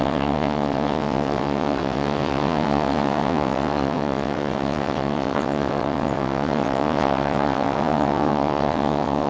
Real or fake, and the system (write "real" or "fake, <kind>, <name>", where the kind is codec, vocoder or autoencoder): fake, vocoder, WaveNeXt